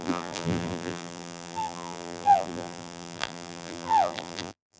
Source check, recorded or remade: remade